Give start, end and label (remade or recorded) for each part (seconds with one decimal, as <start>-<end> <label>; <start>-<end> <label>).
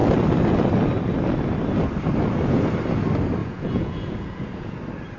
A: 0.0-3.4 recorded; 3.4-4.8 remade; 4.8-5.2 recorded